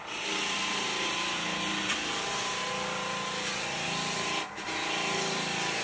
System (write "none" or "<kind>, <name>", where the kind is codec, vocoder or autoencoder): none